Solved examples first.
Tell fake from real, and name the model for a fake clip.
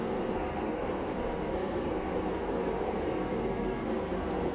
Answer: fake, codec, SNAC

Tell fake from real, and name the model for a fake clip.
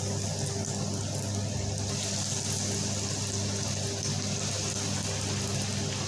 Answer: real